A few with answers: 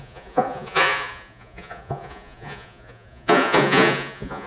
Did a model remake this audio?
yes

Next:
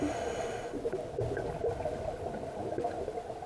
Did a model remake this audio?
no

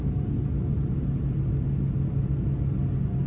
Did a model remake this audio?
no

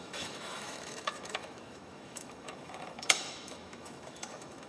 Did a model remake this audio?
yes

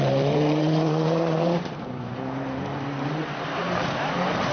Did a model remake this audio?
yes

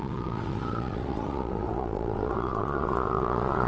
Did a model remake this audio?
yes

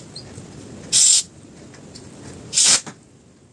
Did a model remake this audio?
no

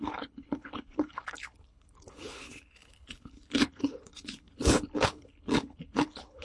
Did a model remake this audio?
yes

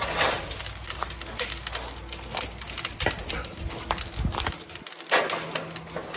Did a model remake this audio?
no